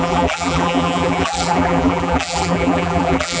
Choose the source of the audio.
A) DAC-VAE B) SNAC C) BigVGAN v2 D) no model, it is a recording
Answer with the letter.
C